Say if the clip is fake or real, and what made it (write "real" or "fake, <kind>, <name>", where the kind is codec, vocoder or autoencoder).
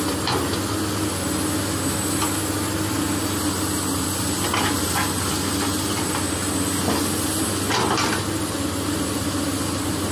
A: real